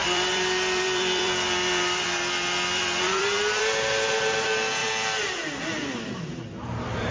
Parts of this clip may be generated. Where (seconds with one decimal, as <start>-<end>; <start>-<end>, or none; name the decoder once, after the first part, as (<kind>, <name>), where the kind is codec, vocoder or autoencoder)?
0.0-3.6 (vocoder, BigVGAN v2); 4.8-6.2